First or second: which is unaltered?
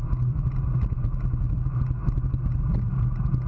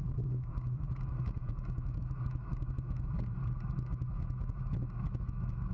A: first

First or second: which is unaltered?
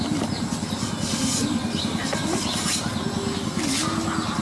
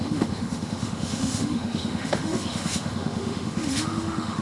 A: first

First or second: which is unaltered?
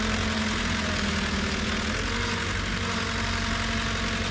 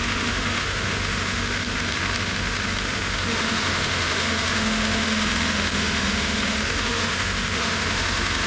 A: first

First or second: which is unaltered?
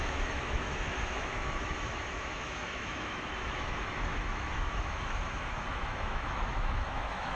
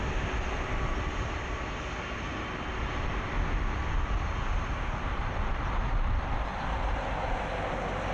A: second